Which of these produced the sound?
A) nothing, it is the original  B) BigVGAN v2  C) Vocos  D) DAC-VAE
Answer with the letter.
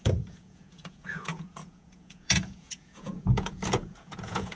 C